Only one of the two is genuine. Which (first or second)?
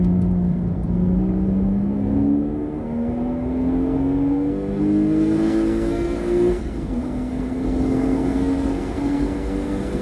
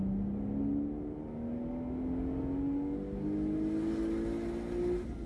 second